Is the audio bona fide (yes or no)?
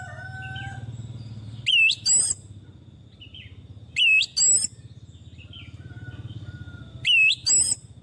yes